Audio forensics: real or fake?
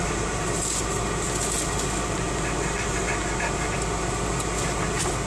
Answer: real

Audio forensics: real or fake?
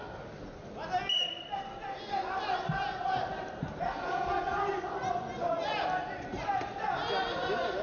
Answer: real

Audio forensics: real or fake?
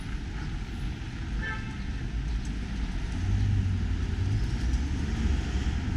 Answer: real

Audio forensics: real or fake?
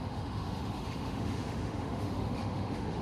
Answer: fake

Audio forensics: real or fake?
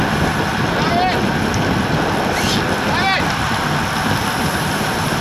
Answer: real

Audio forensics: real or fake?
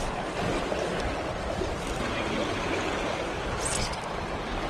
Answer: real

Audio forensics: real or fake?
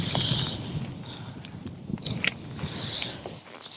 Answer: real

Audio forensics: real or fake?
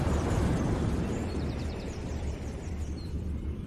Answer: fake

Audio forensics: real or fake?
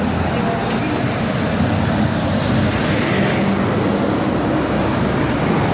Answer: real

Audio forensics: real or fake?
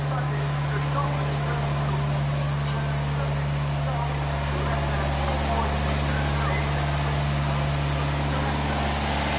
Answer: real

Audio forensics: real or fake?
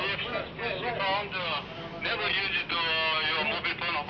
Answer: real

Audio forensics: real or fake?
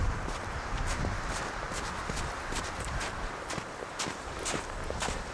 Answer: fake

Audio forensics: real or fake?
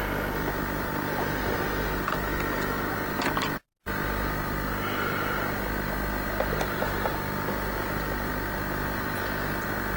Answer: real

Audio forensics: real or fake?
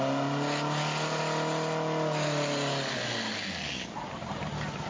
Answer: real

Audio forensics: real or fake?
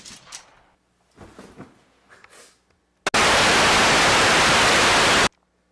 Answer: real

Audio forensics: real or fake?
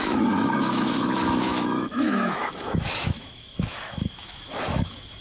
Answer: fake